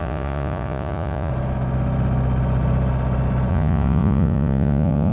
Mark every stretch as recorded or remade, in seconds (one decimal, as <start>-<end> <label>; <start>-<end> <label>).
0.0-1.3 remade; 1.3-3.5 recorded; 3.5-5.1 remade